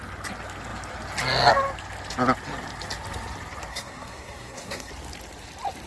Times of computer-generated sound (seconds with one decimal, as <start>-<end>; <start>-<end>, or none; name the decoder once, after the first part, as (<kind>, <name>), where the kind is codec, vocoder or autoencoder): 3.7-4.9 (codec, SNAC)